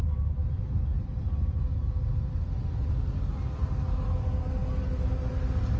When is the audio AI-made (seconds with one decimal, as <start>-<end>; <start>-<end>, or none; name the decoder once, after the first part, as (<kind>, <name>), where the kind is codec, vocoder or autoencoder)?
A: none